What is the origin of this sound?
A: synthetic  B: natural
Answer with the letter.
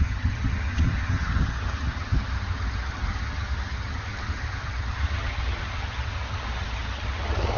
A